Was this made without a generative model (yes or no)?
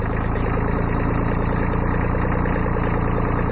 yes